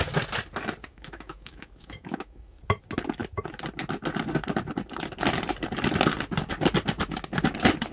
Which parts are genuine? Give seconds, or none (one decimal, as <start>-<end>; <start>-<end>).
0.0-0.8; 2.6-7.9